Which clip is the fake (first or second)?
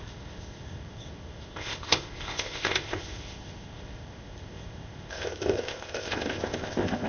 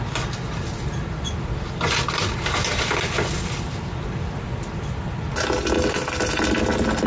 first